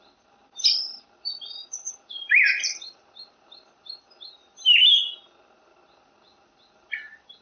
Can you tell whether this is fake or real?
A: real